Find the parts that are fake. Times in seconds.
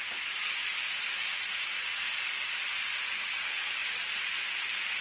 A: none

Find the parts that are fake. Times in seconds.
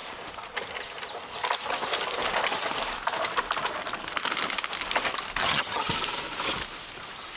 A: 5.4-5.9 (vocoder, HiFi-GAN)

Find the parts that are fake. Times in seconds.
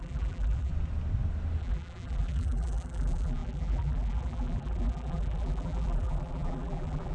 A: 0.0-0.7 (vocoder, BigVGAN v2); 1.6-7.1